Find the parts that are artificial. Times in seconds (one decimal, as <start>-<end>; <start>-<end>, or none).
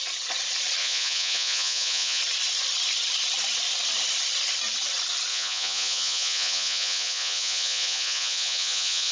0.8-2.2; 5.3-9.1